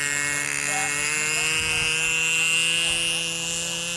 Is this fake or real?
real